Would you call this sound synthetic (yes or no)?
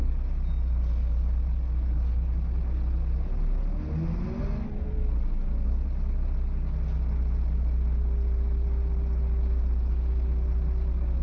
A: no